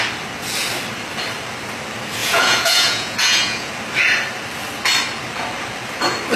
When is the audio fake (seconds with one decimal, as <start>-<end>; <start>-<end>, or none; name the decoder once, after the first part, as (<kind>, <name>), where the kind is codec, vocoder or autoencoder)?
2.2-3.7 (vocoder, Vocos)